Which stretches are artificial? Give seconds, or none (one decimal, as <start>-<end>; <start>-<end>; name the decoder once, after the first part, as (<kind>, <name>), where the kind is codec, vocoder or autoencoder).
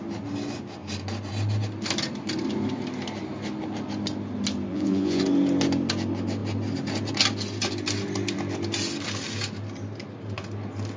4.7-5.2 (vocoder, Vocos)